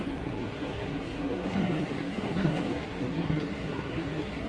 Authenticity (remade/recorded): remade